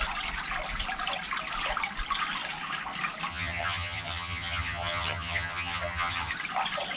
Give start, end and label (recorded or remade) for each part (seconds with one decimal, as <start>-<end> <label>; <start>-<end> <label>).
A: 0.0-3.3 recorded; 3.3-6.3 remade; 6.3-7.0 recorded